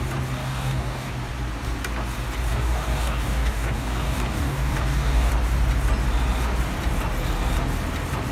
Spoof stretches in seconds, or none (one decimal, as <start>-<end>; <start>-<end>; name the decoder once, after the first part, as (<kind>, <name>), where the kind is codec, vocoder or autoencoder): 0.4-1.1 (codec, DAC); 2.5-5.3